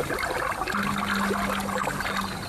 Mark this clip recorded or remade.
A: recorded